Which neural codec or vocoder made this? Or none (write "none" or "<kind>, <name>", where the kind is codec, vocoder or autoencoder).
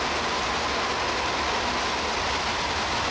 none